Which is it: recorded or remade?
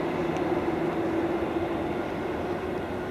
recorded